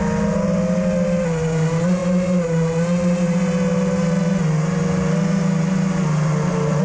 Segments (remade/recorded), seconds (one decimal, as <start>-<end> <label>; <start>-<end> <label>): 0.0-6.8 recorded

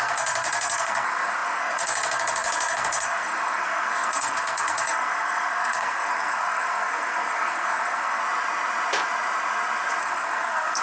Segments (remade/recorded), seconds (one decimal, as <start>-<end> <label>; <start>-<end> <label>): 0.0-8.2 remade; 8.2-10.0 recorded; 10.0-10.8 remade

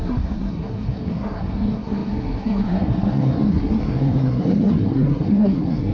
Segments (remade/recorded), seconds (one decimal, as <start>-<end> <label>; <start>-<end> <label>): 0.0-5.9 remade

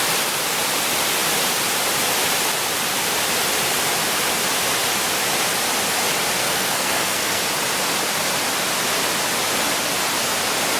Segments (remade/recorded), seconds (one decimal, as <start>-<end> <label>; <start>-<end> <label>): 0.0-6.4 recorded; 6.4-7.4 remade; 7.4-10.8 recorded